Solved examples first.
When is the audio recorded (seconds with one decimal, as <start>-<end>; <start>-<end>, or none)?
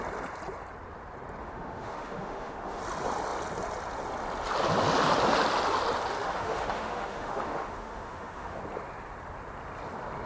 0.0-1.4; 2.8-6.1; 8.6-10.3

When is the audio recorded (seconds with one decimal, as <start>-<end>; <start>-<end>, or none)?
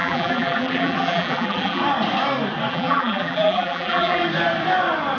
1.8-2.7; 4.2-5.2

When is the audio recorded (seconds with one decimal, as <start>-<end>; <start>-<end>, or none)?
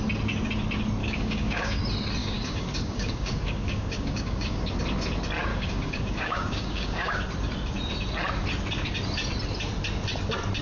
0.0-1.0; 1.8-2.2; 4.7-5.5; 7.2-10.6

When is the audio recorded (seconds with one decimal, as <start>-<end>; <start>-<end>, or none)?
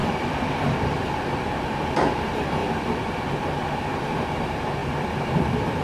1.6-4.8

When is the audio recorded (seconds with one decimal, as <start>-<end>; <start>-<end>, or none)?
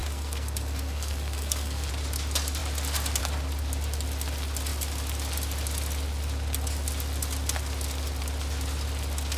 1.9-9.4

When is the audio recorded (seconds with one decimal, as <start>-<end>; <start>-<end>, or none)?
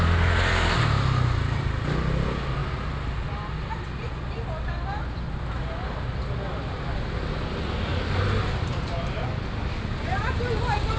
0.0-11.0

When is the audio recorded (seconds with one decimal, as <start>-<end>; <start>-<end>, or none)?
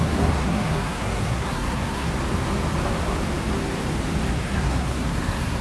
2.1-4.3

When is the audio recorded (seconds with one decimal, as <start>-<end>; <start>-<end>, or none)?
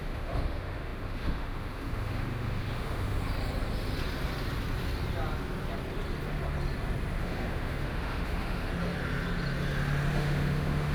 3.2-7.2; 8.7-10.1